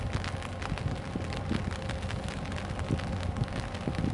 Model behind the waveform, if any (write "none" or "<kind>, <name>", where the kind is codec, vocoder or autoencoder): none